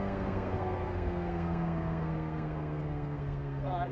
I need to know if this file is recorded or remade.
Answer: remade